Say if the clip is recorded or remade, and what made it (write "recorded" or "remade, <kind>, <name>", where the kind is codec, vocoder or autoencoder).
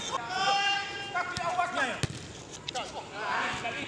recorded